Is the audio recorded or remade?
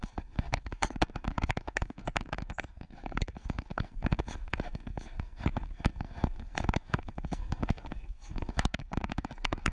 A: remade